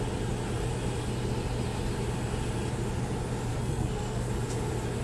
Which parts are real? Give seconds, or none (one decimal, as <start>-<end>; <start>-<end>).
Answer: 0.0-3.5; 4.3-5.0